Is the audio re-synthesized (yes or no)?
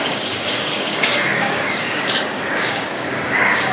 yes